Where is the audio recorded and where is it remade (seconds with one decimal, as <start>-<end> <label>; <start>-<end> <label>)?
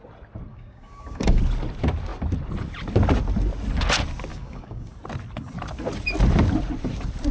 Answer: 0.0-0.5 recorded; 0.5-1.4 remade; 1.4-4.3 recorded; 4.3-4.9 remade; 4.9-7.3 recorded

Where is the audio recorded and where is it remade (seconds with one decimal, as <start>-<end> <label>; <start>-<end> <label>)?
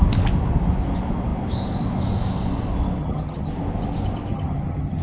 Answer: 0.0-3.0 recorded; 3.0-3.5 remade; 3.5-4.3 recorded; 4.3-5.0 remade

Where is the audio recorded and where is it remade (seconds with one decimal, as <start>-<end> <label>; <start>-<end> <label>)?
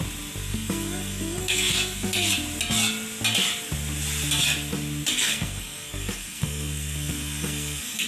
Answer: 0.0-0.5 recorded; 0.5-2.3 remade; 2.3-5.1 recorded; 5.1-8.1 remade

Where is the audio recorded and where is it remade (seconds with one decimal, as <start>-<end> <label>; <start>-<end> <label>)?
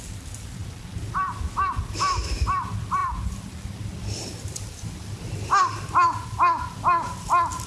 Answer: 0.0-7.7 recorded